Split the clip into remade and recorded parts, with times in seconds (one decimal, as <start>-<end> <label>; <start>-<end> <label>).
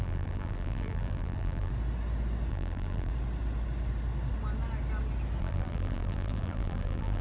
0.0-1.7 remade; 1.7-2.5 recorded; 2.5-3.1 remade; 3.1-5.4 recorded; 5.4-7.2 remade